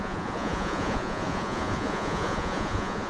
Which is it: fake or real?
fake